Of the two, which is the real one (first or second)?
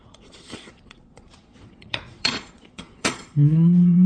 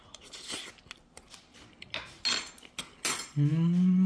second